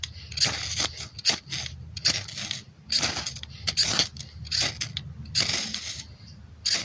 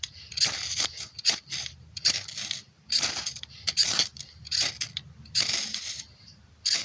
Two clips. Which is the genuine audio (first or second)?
first